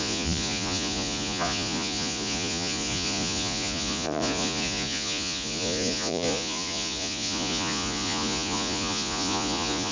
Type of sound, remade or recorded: remade